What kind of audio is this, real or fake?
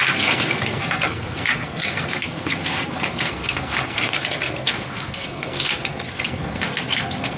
fake